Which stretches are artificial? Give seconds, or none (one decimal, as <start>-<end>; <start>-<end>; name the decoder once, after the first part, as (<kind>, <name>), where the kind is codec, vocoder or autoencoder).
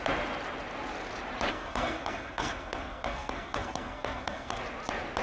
1.5-4.6 (codec, SNAC)